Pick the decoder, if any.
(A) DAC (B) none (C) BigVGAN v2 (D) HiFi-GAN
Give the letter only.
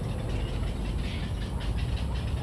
B